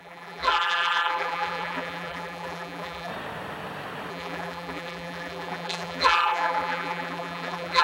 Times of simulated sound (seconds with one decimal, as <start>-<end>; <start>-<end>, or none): 0.0-3.1; 4.1-7.8